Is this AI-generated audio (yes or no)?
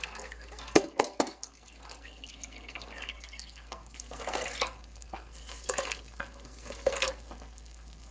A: yes